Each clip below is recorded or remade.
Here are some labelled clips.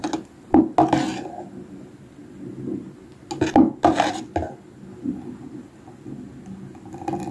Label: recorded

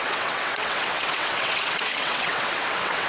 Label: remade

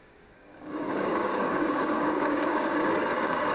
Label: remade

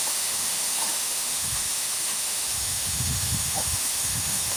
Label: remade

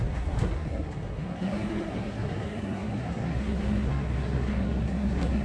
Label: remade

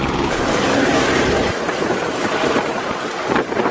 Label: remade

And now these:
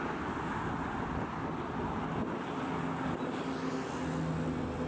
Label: recorded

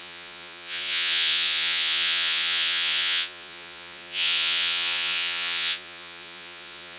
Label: remade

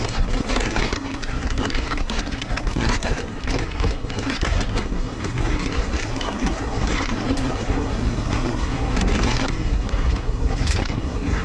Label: remade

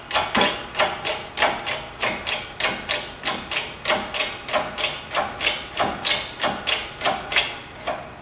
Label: recorded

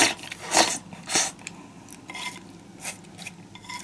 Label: recorded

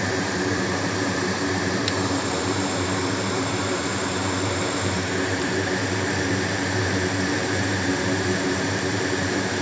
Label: remade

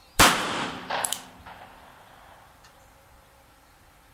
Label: remade